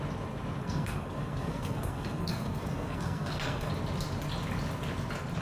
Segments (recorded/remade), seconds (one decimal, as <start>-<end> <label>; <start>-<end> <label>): 0.0-0.6 recorded; 0.6-3.7 remade; 3.7-5.4 recorded